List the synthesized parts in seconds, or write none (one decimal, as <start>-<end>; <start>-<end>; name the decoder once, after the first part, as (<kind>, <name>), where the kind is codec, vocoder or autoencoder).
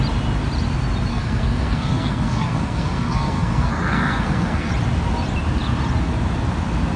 1.1-4.7 (codec, SNAC)